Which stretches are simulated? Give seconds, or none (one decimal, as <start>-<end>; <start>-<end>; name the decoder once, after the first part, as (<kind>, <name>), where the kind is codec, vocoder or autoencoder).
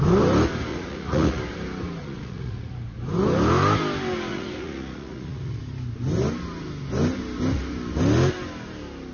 0.7-1.4 (vocoder, Vocos); 2.0-2.7; 4.3-5.6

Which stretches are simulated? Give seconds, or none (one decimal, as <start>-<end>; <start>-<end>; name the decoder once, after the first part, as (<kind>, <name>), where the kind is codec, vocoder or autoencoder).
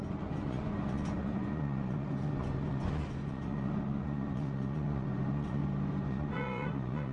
0.0-5.6 (vocoder, Vocos); 6.1-7.1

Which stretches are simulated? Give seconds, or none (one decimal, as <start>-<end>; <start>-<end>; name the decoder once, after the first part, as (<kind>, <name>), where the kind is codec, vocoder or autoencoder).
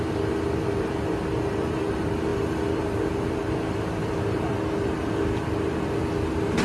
none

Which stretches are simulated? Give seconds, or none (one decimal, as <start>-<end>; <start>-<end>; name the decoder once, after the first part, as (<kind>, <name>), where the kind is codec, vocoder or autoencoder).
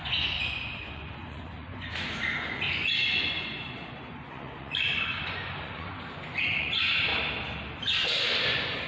0.0-7.1 (vocoder, Vocos); 8.4-8.9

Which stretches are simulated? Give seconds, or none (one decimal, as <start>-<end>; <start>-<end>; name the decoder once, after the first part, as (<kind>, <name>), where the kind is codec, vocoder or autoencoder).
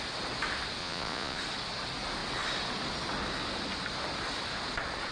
0.8-1.4 (vocoder, Vocos)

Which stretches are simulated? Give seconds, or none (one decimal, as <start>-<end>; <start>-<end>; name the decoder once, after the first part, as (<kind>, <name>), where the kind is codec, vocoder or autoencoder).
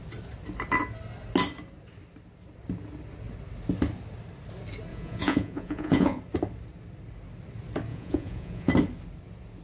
4.9-6.2 (vocoder, Vocos); 7.9-8.7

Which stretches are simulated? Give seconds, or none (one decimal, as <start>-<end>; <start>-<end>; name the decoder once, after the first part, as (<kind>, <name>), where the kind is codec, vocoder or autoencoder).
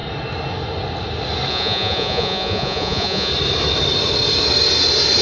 1.5-3.3 (vocoder, Vocos)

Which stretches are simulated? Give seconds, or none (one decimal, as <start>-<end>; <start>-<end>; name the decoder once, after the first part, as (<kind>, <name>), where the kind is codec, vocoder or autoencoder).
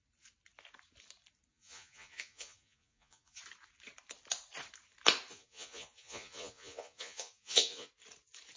1.5-3.4 (vocoder, Vocos); 5.3-7.9